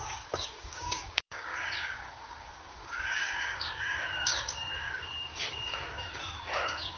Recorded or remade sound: remade